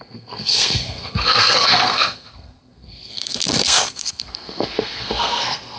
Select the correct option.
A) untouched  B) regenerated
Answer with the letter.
B